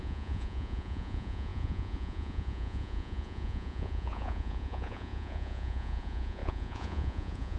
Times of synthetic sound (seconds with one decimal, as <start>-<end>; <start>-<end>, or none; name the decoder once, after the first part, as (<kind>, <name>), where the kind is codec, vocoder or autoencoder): 0.0-7.6 (vocoder, Vocos)